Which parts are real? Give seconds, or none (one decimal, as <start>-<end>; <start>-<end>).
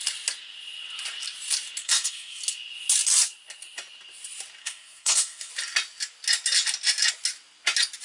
0.0-1.8; 2.4-4.6; 5.5-8.0